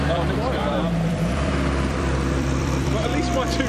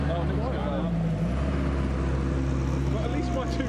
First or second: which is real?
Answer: second